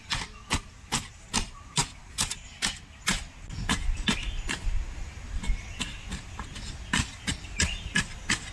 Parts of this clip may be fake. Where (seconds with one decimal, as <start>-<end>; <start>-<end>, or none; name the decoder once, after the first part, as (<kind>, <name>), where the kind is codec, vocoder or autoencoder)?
none